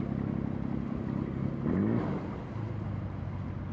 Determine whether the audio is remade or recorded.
recorded